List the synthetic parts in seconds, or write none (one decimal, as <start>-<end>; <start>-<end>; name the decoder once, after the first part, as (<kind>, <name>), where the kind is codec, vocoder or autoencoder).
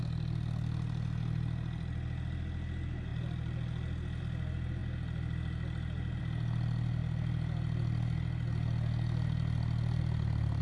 none